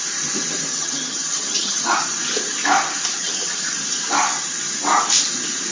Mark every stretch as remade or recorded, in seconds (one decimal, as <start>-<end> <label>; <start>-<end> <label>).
0.0-0.7 recorded; 0.7-2.0 remade; 2.0-3.2 recorded; 3.2-3.7 remade; 3.7-5.7 recorded

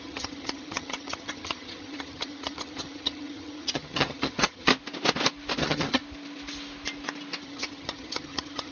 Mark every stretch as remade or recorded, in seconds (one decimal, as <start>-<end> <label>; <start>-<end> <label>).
0.0-4.7 remade; 4.7-5.6 recorded; 5.6-6.0 remade; 6.0-7.4 recorded; 7.4-8.7 remade

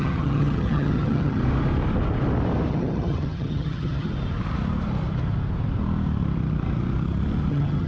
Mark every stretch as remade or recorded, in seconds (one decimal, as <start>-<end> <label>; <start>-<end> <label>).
0.0-1.4 remade; 1.4-2.7 recorded; 2.7-4.1 remade; 4.1-7.5 recorded; 7.5-7.9 remade

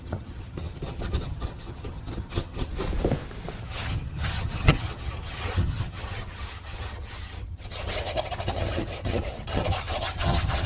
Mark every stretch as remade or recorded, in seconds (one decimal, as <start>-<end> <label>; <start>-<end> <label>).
0.0-2.7 remade; 2.7-3.6 recorded; 3.6-10.7 remade

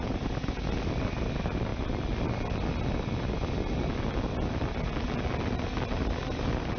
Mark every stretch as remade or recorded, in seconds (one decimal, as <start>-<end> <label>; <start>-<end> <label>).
0.0-6.8 recorded

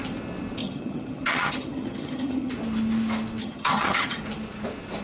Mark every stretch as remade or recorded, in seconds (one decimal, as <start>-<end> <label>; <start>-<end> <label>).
0.0-0.6 recorded; 0.6-2.5 remade; 2.5-3.4 recorded; 3.4-4.2 remade; 4.2-5.0 recorded

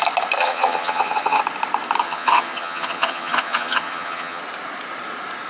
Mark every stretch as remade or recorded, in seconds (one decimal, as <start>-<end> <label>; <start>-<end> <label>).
0.0-0.4 recorded; 0.4-1.4 remade; 1.4-2.0 recorded; 2.0-4.4 remade; 4.4-5.5 recorded

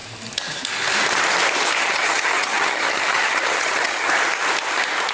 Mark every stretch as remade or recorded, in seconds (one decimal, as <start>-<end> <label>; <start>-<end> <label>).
0.0-1.8 recorded; 1.8-4.1 remade; 4.1-5.1 recorded